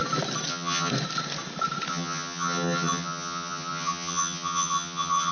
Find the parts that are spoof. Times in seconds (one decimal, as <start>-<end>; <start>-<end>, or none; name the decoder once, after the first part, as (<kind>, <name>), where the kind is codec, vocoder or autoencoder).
0.5-0.9 (vocoder, HiFi-GAN); 1.9-5.3